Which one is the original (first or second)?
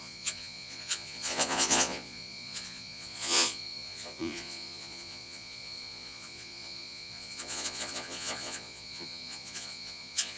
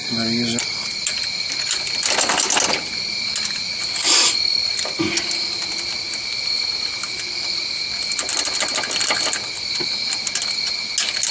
second